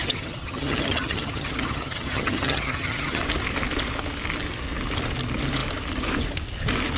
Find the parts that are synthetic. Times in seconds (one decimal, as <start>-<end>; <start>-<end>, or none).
0.0-3.2